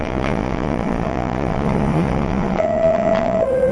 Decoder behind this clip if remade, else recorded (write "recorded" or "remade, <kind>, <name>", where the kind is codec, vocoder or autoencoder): remade, vocoder, Vocos